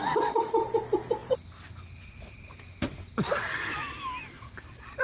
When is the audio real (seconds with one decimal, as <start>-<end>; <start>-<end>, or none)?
0.0-5.0